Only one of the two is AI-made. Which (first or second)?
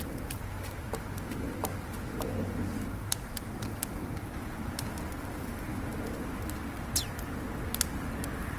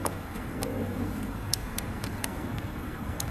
second